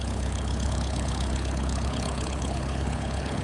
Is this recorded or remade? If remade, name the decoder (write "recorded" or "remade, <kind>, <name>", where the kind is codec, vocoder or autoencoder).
remade, codec, HILCodec